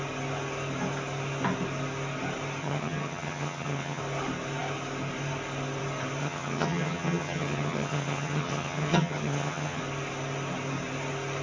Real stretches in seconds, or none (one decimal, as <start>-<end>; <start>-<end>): 0.0-2.6; 4.0-6.2; 9.8-11.4